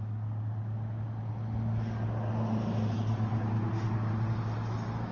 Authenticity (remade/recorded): recorded